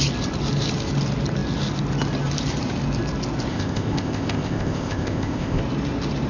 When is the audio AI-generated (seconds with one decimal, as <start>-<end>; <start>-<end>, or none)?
3.5-5.6